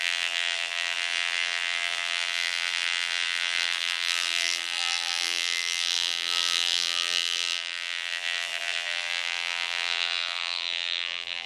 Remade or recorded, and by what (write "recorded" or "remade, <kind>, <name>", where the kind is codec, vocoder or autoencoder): remade, vocoder, BigVGAN v2